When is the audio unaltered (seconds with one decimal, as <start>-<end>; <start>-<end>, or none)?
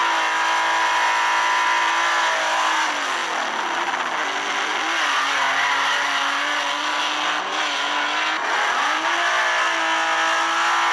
0.0-10.9